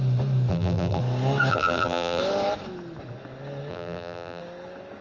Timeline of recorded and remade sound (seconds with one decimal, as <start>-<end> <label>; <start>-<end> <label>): 0.0-0.5 recorded; 0.5-1.0 remade; 1.0-1.5 recorded; 1.5-2.2 remade; 2.2-3.7 recorded; 3.7-4.4 remade; 4.4-5.0 recorded